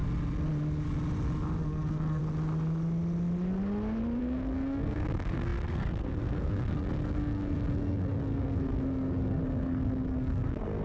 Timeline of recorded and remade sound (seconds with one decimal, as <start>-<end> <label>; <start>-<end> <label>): 0.0-1.6 recorded; 1.6-2.2 remade; 2.2-4.2 recorded; 4.2-10.8 remade